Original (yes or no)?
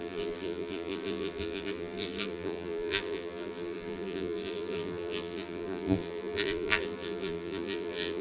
no